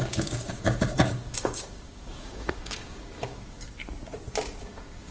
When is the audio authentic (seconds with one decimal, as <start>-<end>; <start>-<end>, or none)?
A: 3.8-4.6